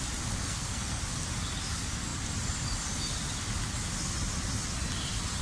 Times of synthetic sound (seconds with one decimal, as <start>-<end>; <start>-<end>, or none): 0.4-1.0